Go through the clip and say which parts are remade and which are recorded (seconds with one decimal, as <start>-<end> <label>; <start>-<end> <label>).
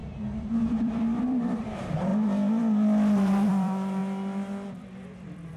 0.0-2.1 remade; 2.1-3.5 recorded; 3.5-4.0 remade; 4.0-4.8 recorded; 4.8-5.6 remade